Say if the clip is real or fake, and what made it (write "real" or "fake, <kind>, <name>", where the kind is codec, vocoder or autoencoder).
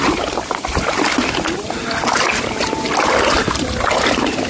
real